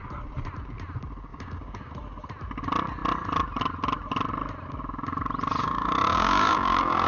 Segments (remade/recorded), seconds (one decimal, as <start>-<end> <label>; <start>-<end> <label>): 0.0-1.3 recorded; 1.3-1.9 remade; 1.9-5.6 recorded; 5.6-7.1 remade